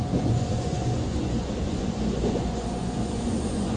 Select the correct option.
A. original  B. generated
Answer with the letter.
B